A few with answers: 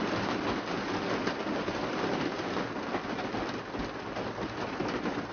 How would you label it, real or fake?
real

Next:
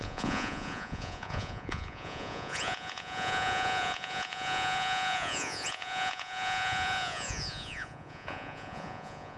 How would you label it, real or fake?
fake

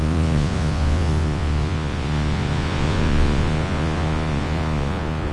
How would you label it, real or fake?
fake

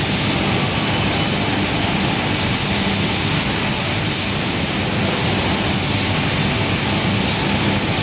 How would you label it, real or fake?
real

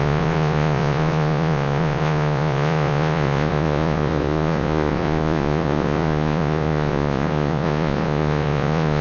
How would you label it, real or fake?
fake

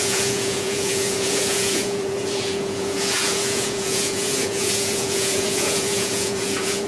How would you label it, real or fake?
fake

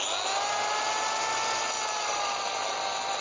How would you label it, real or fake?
real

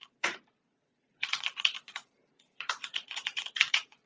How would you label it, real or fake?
fake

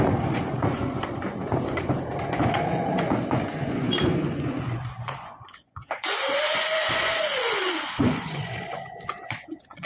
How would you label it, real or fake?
fake